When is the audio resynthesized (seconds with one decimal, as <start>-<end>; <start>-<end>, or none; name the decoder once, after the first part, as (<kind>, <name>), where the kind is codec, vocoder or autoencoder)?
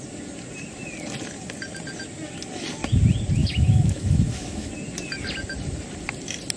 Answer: 3.4-4.7 (autoencoder, DAC-VAE)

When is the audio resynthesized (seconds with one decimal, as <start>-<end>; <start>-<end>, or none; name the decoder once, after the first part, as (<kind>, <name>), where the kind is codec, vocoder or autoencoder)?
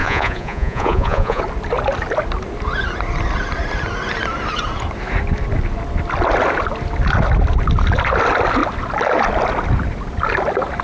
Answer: 0.0-1.4 (vocoder, Vocos)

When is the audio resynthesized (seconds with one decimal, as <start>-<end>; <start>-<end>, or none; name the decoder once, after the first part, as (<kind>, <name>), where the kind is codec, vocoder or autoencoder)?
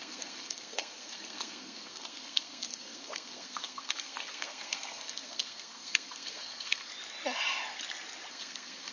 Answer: 0.0-6.9 (codec, SNAC); 8.3-8.9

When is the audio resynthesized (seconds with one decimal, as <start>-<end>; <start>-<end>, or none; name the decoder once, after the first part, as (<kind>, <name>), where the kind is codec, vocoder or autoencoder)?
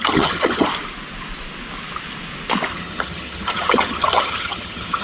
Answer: 0.0-0.7 (vocoder, HiFi-GAN); 2.7-5.0